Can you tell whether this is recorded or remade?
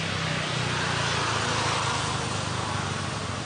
recorded